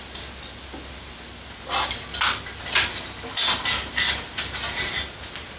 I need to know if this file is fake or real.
real